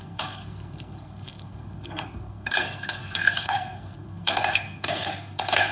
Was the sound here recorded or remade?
remade